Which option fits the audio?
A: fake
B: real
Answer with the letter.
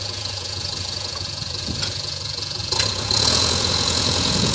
A